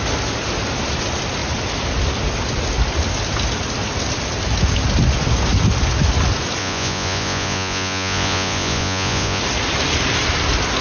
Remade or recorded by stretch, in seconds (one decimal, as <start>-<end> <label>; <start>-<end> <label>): 0.0-6.6 recorded; 6.6-9.4 remade; 9.4-10.8 recorded

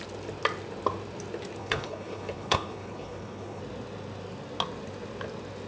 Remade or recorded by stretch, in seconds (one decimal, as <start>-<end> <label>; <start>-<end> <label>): 0.0-1.6 recorded; 1.6-3.6 remade; 3.6-5.7 recorded

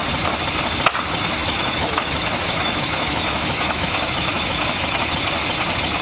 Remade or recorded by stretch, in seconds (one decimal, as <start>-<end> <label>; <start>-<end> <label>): 0.0-1.4 recorded; 1.4-5.0 remade; 5.0-6.0 recorded

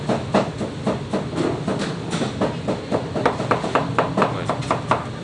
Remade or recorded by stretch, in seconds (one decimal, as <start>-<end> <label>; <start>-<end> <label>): 0.0-1.7 recorded; 1.7-4.8 remade; 4.8-5.2 recorded